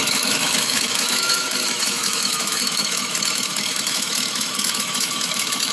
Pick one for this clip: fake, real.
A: fake